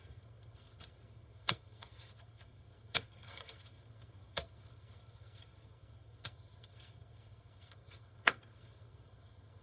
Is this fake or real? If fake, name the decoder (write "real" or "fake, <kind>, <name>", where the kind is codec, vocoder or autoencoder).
fake, codec, SNAC